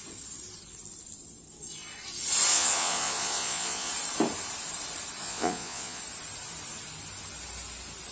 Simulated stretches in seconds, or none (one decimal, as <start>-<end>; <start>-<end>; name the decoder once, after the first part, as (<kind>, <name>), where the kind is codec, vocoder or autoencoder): 2.5-3.9 (vocoder, Vocos); 5.2-6.0